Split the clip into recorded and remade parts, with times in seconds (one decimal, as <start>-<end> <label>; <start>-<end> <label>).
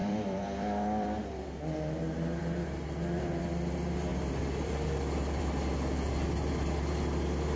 0.0-1.2 remade; 1.2-4.1 recorded; 4.1-5.4 remade; 5.4-7.6 recorded